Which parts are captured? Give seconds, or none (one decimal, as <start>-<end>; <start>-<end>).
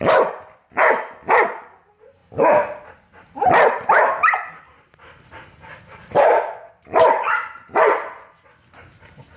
0.0-9.4